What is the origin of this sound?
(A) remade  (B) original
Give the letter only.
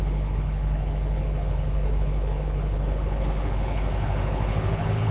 A